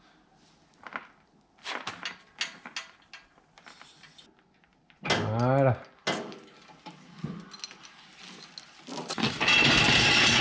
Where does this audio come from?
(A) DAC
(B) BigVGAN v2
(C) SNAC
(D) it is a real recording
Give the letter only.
D